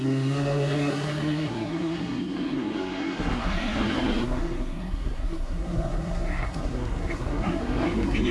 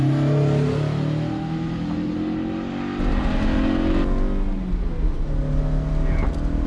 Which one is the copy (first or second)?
first